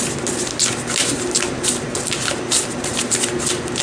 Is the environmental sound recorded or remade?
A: recorded